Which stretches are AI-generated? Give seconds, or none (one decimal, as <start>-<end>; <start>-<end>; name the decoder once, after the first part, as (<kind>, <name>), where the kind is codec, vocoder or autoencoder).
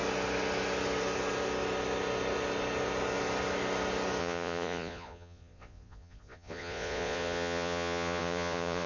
4.2-8.9 (vocoder, Vocos)